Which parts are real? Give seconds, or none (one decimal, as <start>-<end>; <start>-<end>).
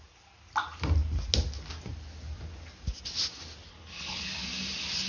0.0-3.7; 4.2-5.1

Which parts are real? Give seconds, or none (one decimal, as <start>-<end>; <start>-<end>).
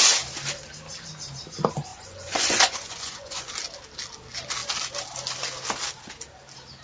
0.0-1.9; 3.5-6.8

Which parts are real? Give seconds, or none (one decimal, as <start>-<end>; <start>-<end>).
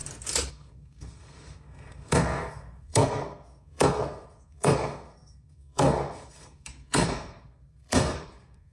0.0-0.5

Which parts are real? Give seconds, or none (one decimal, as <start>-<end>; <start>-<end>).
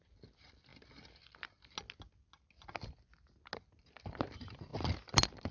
0.0-5.5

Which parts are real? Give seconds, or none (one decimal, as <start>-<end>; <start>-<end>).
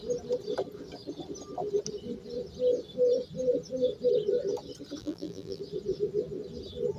0.0-5.0; 5.6-7.0